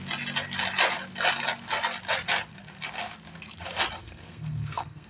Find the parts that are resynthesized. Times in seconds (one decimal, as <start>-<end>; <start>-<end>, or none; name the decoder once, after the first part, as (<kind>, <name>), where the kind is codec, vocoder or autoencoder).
4.0-5.1 (codec, SNAC)